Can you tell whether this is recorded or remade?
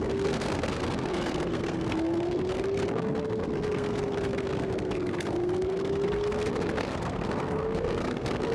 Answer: remade